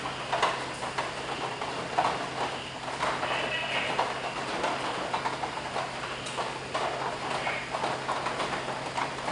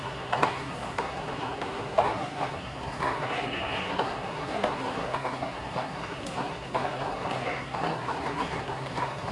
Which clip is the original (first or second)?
first